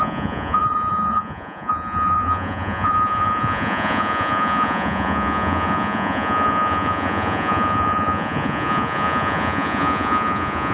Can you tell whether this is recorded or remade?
remade